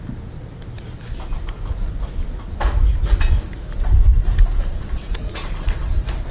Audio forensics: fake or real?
real